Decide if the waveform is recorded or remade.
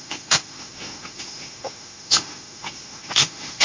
remade